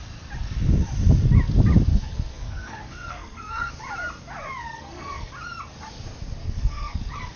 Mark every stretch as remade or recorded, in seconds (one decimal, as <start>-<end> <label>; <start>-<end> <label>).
0.0-1.9 recorded; 1.9-3.7 remade; 3.7-4.7 recorded; 4.7-5.3 remade; 5.3-6.4 recorded; 6.4-7.0 remade; 7.0-7.4 recorded